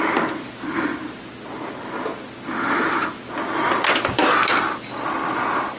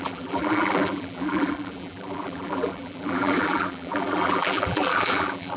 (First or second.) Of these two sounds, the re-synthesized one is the second